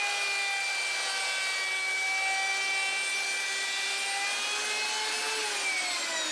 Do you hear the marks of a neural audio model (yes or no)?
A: no